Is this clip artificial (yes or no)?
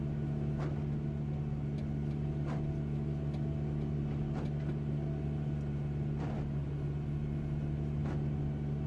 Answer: no